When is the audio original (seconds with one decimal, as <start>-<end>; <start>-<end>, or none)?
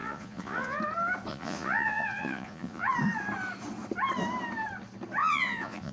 0.8-1.3; 2.9-5.2